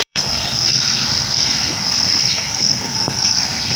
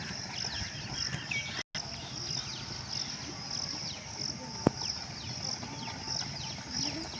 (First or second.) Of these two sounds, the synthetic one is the first